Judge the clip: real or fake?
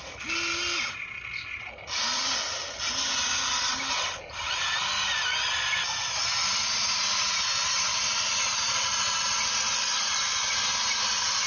real